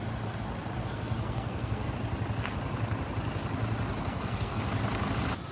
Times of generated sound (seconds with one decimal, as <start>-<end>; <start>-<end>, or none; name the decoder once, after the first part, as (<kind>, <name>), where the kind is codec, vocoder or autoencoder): 0.8-1.9 (codec, SNAC); 4.0-4.6